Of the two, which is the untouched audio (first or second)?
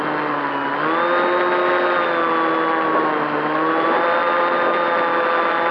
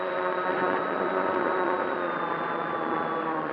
first